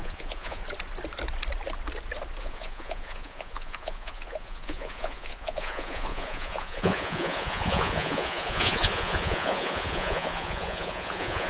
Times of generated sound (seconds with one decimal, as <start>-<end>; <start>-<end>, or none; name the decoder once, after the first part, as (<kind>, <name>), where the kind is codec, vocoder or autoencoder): 0.0-0.6 (vocoder, Vocos); 2.4-11.5

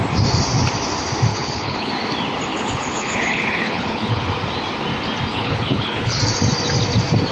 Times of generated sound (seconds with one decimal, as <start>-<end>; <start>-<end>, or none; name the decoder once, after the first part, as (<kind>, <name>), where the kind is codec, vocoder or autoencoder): 1.3-1.9 (codec, HILCodec); 2.5-4.2; 5.3-6.2

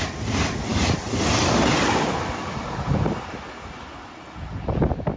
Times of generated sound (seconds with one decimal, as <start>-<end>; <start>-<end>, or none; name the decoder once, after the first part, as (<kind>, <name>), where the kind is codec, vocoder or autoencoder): none